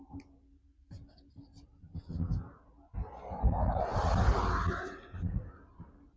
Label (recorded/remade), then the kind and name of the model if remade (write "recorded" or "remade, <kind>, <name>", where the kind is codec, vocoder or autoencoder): recorded